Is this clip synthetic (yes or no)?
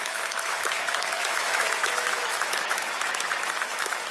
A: yes